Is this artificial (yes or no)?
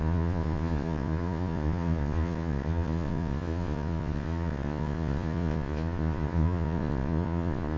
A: yes